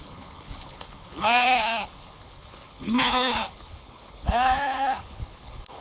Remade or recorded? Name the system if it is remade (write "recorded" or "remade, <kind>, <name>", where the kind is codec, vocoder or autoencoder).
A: remade, codec, HILCodec